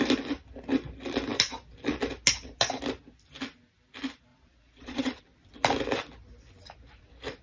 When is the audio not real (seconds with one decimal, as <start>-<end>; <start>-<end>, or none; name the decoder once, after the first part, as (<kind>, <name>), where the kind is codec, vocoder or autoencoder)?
4.3-5.2 (vocoder, Vocos)